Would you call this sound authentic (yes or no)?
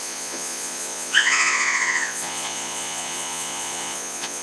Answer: no